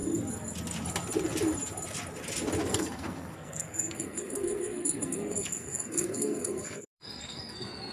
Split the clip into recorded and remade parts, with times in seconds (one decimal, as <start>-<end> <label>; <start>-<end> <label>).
0.0-2.7 recorded; 2.7-7.9 remade